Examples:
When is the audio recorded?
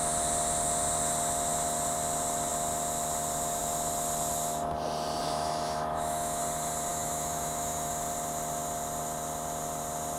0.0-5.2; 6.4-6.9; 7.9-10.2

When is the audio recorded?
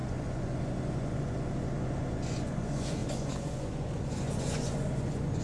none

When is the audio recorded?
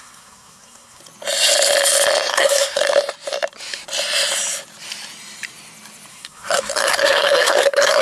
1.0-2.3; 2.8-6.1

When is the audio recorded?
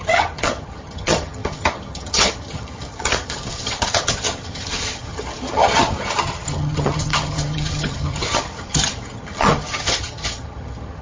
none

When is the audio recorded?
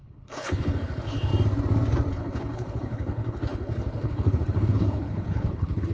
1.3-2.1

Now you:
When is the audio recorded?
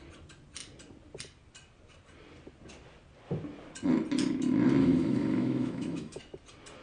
0.0-4.8; 6.2-6.8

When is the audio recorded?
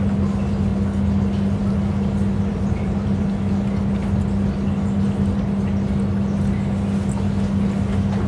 0.0-2.5; 3.2-8.3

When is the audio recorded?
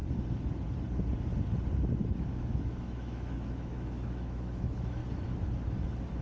0.0-2.2; 5.0-6.2